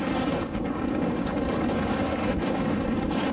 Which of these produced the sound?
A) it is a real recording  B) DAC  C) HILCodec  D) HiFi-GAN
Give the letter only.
B